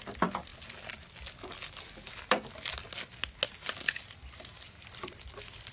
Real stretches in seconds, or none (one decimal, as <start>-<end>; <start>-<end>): 0.0-5.7